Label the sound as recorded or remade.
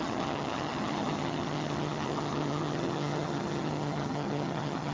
remade